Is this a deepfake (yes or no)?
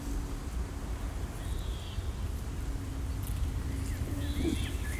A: no